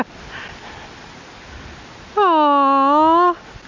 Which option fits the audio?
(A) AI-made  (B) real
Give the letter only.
B